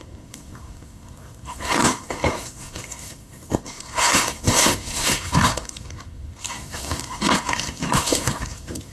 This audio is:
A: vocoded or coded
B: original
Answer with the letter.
A